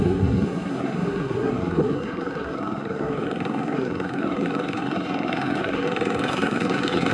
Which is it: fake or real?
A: fake